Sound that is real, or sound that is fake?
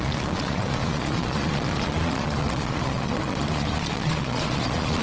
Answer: fake